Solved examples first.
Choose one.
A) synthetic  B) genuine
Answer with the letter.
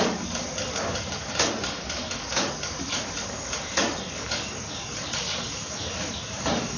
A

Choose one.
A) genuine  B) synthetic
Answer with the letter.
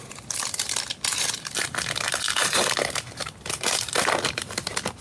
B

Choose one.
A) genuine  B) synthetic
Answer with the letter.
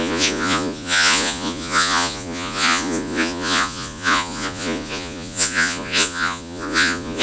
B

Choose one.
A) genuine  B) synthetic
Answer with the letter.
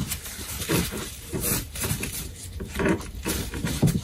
B